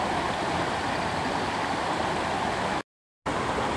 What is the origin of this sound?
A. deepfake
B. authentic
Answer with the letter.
B